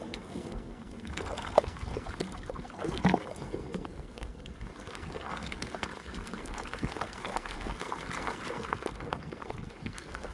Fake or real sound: fake